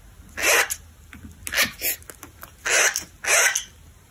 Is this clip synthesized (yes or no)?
no